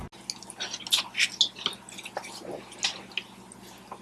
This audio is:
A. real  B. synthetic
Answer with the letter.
A